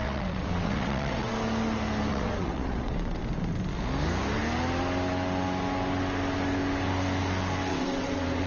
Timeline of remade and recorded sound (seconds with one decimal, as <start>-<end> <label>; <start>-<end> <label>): 0.0-1.3 remade; 1.3-2.1 recorded; 2.1-3.2 remade; 3.2-7.7 recorded; 7.7-8.5 remade

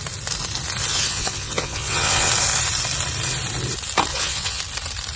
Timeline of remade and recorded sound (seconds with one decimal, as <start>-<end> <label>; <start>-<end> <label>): 0.0-0.9 recorded; 0.9-2.3 remade; 2.3-4.1 recorded; 4.1-4.6 remade; 4.6-5.2 recorded

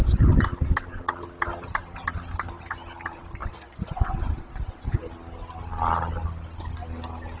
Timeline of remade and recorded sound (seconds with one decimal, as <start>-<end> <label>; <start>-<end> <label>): 0.0-3.4 recorded; 3.4-5.0 remade; 5.0-7.4 recorded

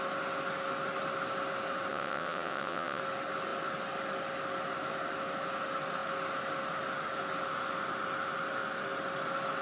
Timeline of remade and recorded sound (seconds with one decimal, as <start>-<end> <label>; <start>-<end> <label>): 0.0-1.9 recorded; 1.9-3.0 remade; 3.0-9.6 recorded